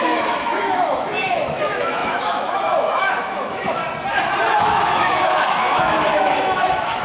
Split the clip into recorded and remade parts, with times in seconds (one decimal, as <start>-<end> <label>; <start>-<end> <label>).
0.0-3.8 remade; 3.8-4.6 recorded; 4.6-7.0 remade

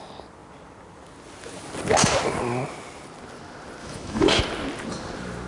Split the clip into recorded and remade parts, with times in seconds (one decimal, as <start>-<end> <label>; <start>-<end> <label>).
0.0-3.8 recorded; 3.8-4.4 remade; 4.4-5.5 recorded

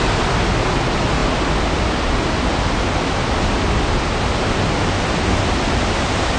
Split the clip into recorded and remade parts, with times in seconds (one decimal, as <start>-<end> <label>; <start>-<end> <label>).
0.0-6.4 recorded

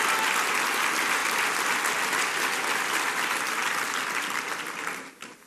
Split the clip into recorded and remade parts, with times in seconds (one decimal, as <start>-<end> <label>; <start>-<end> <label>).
0.0-5.5 recorded

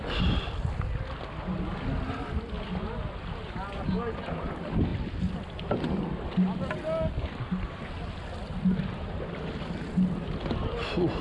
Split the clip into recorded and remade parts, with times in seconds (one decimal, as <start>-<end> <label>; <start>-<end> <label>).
0.0-11.2 recorded

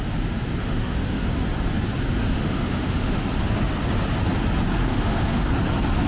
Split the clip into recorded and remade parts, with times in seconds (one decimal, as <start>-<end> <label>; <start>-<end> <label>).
0.0-0.6 recorded; 0.6-1.3 remade; 1.3-2.2 recorded; 2.2-3.2 remade; 3.2-4.8 recorded; 4.8-5.5 remade; 5.5-6.1 recorded

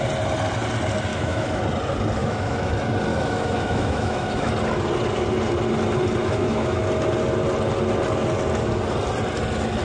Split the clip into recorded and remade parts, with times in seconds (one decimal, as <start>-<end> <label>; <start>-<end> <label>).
0.0-1.1 recorded; 1.1-1.6 remade; 1.6-2.2 recorded; 2.2-2.7 remade; 2.7-3.1 recorded; 3.1-4.5 remade; 4.5-6.2 recorded; 6.2-6.8 remade; 6.8-9.8 recorded